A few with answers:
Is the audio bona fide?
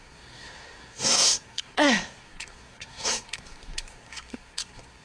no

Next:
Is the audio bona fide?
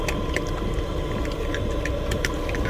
yes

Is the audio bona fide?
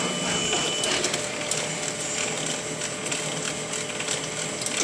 yes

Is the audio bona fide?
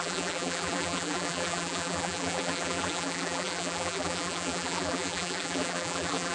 no